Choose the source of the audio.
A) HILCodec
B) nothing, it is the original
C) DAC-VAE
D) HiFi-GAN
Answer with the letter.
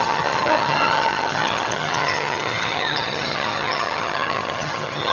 D